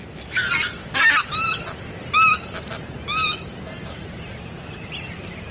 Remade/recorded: recorded